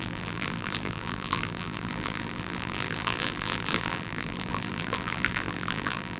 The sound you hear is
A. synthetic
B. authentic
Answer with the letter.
A